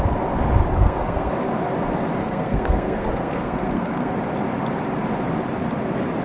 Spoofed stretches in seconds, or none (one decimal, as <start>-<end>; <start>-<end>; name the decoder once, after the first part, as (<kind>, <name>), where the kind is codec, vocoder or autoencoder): 0.6-1.3 (codec, SNAC); 2.2-4.1